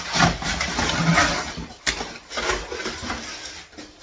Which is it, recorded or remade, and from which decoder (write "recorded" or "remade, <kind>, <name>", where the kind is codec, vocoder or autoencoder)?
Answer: recorded